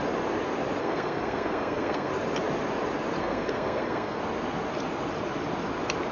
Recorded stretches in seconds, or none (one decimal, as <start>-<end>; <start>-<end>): 0.0-0.8; 2.1-3.2; 4.2-6.1